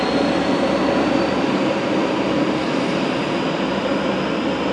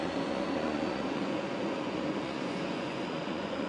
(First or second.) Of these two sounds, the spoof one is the second